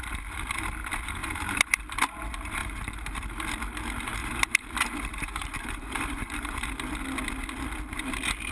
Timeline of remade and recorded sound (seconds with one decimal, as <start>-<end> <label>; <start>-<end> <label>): 0.0-1.2 recorded; 1.2-1.8 remade; 1.8-2.6 recorded; 2.6-3.3 remade; 3.3-4.2 recorded; 4.2-6.6 remade; 6.6-8.5 recorded